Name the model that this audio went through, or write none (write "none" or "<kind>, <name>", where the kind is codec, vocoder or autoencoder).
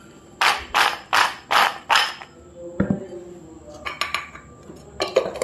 none